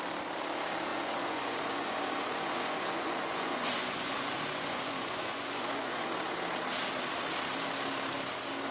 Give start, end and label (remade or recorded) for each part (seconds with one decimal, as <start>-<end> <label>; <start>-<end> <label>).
0.0-0.9 recorded; 0.9-6.1 remade; 6.1-8.7 recorded